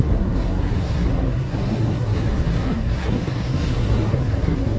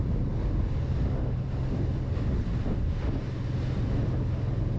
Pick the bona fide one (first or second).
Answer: second